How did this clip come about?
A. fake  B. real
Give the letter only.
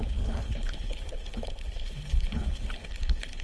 A